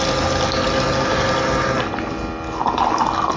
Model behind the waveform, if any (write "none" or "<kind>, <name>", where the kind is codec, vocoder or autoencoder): none